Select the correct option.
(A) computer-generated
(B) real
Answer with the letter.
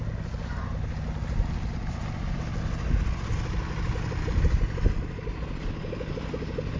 B